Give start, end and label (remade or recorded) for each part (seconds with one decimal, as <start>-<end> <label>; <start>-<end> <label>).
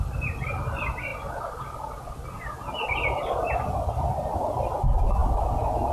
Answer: 0.0-5.9 recorded